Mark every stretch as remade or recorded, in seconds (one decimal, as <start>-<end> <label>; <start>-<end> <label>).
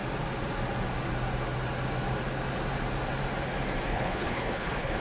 0.0-3.9 recorded; 3.9-5.0 remade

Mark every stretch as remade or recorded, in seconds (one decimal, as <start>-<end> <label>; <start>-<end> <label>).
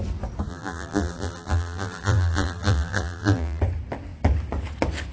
0.0-0.5 recorded; 0.5-3.6 remade; 3.6-5.1 recorded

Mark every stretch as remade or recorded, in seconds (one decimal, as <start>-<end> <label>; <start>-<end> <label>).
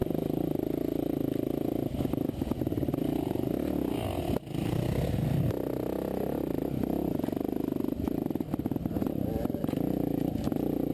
0.0-10.9 recorded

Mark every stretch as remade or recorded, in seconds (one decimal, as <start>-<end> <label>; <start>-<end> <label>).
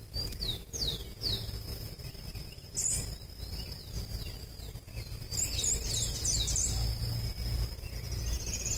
0.0-8.8 recorded